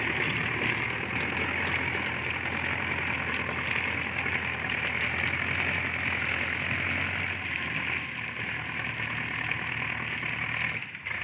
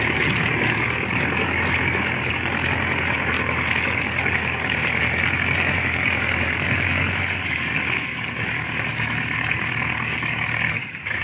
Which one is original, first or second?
first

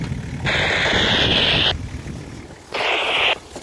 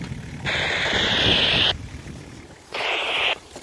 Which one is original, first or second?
first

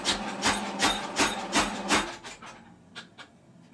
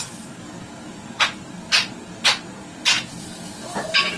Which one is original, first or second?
first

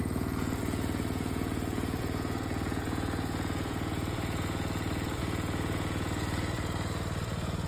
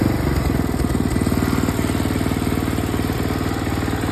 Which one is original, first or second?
second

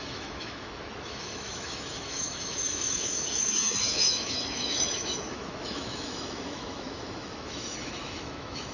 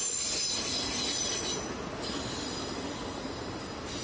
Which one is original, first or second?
second